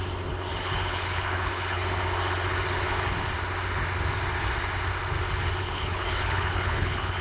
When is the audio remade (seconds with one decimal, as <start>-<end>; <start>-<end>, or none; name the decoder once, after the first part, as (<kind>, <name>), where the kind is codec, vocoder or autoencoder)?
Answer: 0.6-1.8 (codec, HILCodec); 5.6-7.2